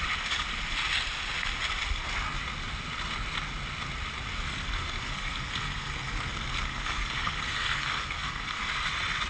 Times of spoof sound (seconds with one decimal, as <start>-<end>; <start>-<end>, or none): 4.4-8.6